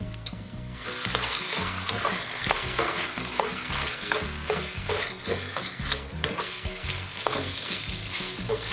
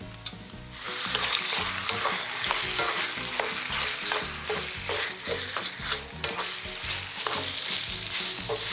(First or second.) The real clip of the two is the second